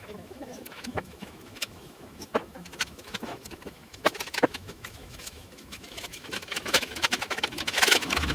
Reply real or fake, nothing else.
fake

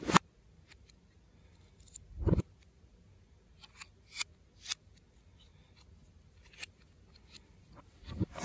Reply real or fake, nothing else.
real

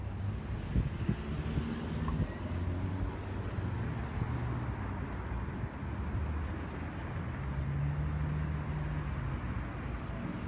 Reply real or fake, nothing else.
real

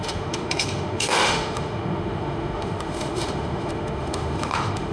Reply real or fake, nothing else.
fake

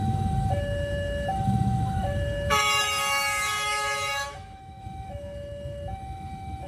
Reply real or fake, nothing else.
fake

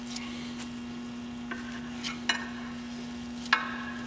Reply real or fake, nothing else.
real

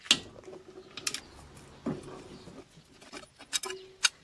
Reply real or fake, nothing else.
real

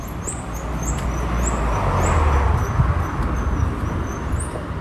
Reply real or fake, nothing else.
real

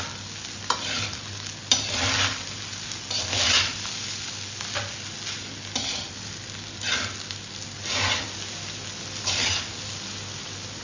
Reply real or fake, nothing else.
real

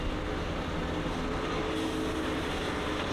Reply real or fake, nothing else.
real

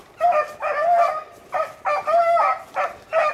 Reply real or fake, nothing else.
real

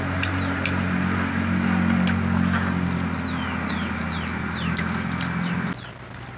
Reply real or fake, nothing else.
real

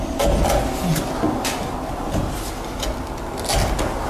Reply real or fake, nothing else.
real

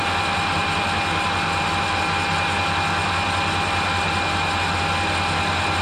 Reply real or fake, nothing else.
real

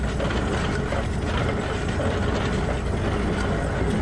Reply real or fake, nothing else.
real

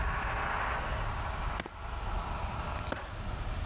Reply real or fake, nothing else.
real